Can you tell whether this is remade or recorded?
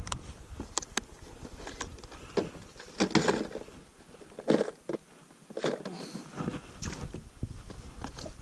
recorded